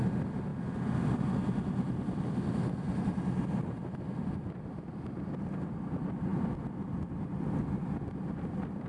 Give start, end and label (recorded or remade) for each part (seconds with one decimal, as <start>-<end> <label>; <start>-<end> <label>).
0.0-8.9 recorded

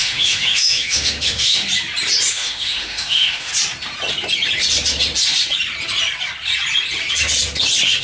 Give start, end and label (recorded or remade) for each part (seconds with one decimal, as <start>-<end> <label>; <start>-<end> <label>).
0.0-1.6 remade; 1.6-2.3 recorded; 2.3-3.5 remade; 3.5-8.0 recorded

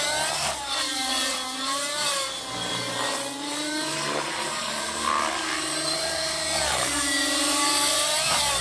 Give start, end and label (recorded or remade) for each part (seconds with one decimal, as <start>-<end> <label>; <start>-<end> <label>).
0.0-8.6 remade

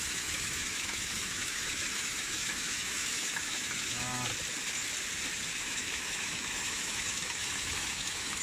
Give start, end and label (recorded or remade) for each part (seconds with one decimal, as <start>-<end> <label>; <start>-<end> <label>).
0.0-4.3 remade; 4.3-5.6 recorded; 5.6-8.4 remade

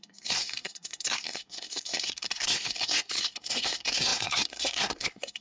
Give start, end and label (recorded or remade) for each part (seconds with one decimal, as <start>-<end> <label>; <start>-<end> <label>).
0.0-5.4 remade

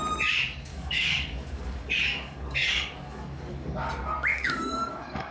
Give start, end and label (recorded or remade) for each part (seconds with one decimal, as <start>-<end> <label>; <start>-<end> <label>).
0.0-0.7 recorded; 0.7-3.9 remade; 3.9-4.3 recorded; 4.3-5.3 remade